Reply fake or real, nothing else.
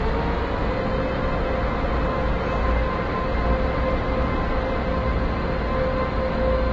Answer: real